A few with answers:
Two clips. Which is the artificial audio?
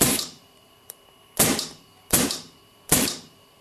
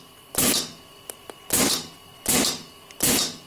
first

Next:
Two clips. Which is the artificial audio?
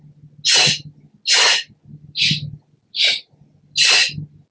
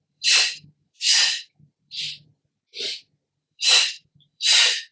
second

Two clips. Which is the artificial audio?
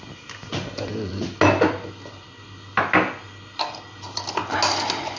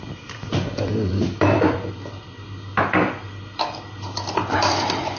second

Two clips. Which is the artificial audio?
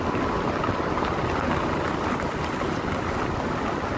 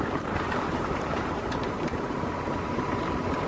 second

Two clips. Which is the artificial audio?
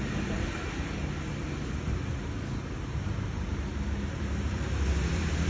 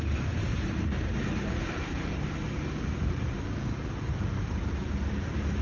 second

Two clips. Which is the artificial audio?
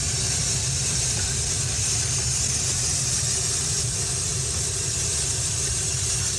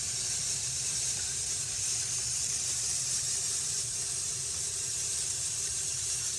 second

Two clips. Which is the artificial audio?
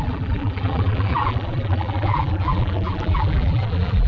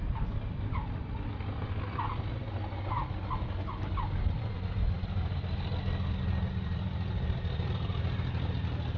first